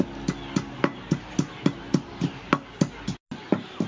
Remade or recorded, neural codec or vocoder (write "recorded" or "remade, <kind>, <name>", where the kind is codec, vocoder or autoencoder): recorded